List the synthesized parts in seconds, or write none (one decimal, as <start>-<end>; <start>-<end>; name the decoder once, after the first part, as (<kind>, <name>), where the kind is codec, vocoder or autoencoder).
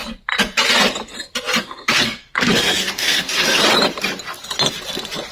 1.6-3.6 (codec, SNAC)